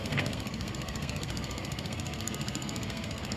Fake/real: fake